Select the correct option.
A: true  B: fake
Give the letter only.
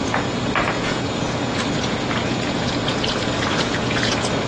B